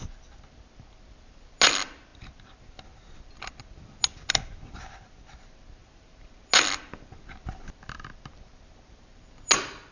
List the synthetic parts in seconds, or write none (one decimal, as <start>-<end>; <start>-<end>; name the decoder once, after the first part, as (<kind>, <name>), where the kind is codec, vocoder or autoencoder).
none